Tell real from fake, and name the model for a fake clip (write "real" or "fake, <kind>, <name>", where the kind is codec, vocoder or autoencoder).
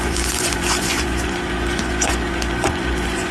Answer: fake, vocoder, Vocos